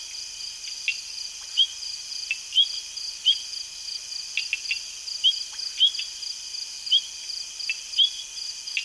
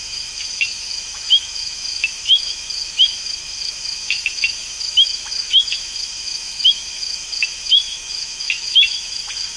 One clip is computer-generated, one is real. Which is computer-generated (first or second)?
second